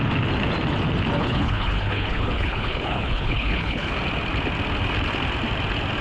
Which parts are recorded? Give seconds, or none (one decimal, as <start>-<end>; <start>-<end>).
0.0-1.2; 3.9-6.0